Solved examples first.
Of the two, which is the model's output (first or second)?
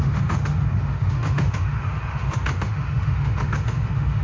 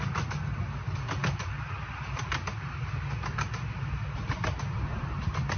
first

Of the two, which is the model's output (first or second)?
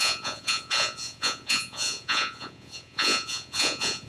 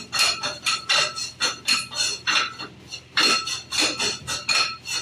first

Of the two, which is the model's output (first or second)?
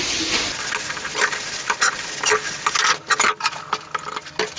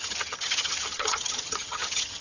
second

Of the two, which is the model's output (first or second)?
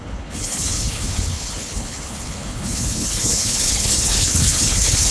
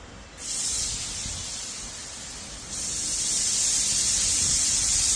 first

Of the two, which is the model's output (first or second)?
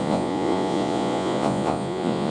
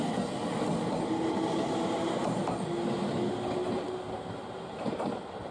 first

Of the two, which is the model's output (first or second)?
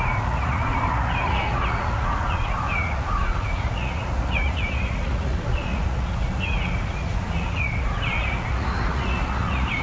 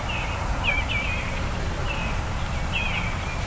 first